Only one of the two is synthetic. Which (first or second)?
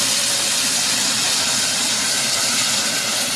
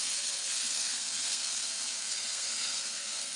second